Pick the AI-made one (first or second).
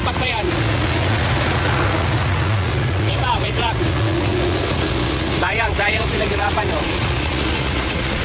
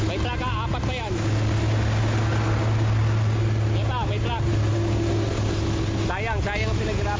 first